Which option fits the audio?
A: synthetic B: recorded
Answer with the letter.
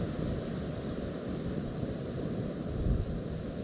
A